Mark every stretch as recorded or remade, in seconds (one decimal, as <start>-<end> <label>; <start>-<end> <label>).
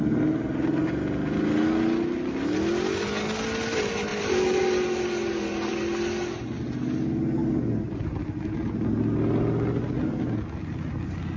0.0-11.4 recorded